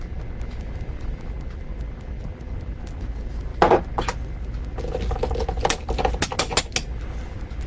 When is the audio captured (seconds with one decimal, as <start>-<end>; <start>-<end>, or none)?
0.0-7.7